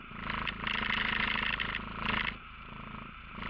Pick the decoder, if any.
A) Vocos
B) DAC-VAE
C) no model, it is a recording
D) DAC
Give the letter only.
C